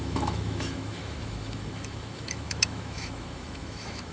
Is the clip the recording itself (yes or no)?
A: no